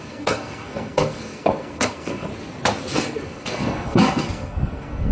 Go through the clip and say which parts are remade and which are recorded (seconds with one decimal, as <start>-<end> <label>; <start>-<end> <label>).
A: 0.0-2.3 remade; 2.3-2.9 recorded; 2.9-5.1 remade